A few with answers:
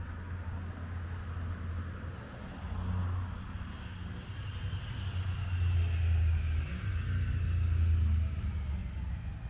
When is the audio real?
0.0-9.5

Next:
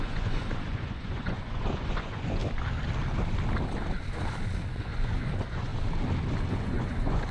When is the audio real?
2.4-4.7; 5.7-6.5

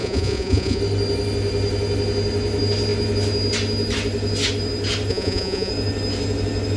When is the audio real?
0.8-5.1; 5.7-6.8

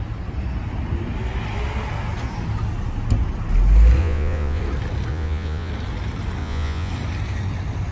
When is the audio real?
0.0-4.0; 4.6-5.1; 5.7-6.4; 6.9-7.9

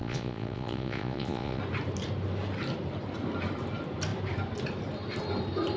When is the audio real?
1.6-5.8

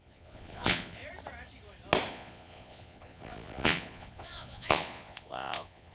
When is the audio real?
1.0-2.1

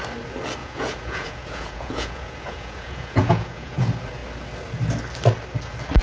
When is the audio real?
0.0-0.6; 3.8-6.0

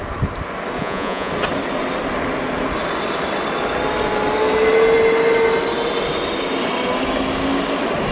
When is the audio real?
0.0-0.8; 1.3-8.1